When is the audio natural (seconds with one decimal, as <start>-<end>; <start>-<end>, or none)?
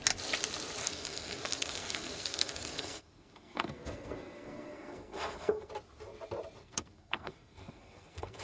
0.0-0.8; 5.7-6.6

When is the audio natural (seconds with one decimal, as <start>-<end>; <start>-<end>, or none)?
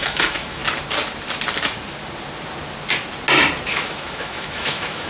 0.6-3.7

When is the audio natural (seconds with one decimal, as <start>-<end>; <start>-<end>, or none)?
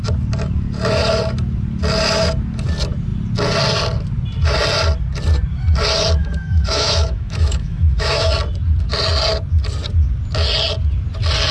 0.0-6.2; 8.3-11.5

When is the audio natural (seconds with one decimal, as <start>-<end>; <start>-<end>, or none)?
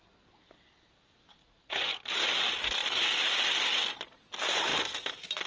0.0-1.4; 2.0-5.5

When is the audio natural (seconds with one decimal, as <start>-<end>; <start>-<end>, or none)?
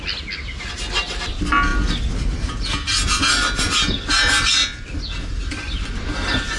0.0-6.6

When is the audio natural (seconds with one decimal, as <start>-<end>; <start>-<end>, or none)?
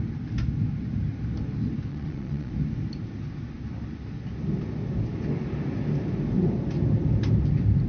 0.0-1.9; 2.5-7.9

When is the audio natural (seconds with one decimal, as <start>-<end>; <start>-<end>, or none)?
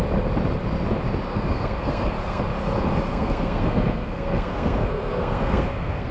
0.0-1.3; 2.4-3.1